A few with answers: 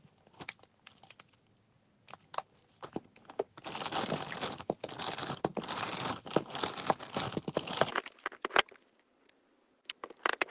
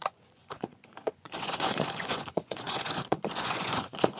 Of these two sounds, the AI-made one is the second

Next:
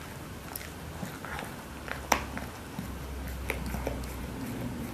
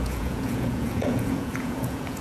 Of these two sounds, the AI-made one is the second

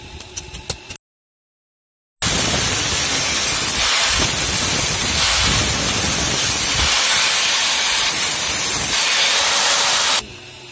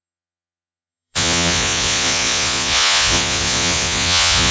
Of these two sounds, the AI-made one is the second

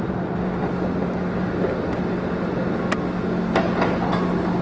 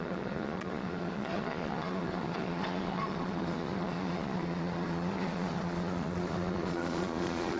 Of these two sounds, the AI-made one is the second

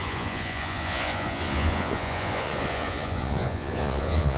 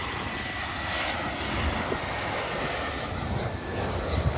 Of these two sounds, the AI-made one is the first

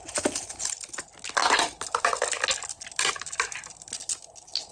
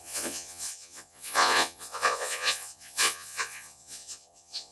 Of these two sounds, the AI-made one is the second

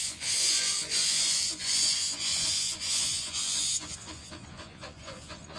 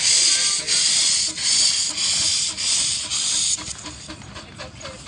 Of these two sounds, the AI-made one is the first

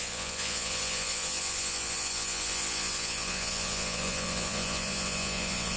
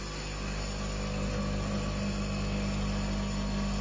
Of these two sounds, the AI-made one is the first